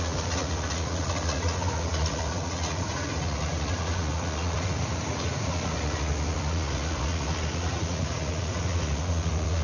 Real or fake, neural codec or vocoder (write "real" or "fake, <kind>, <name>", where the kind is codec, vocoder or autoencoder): fake, vocoder, Vocos